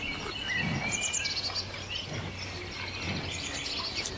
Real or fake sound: real